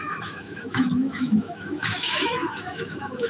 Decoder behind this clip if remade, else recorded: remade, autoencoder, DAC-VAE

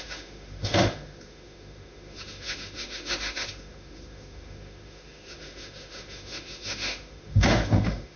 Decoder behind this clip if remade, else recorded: remade, autoencoder, DAC-VAE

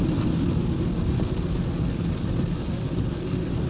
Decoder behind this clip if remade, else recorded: recorded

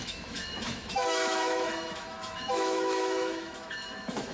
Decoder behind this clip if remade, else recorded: remade, autoencoder, DAC-VAE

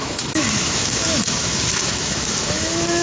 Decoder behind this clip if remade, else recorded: remade, autoencoder, DAC-VAE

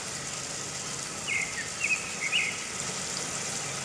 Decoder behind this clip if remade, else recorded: recorded